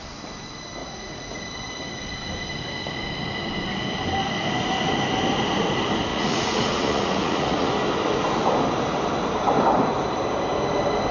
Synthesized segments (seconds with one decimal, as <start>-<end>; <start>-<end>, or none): 0.8-1.4; 6.1-7.7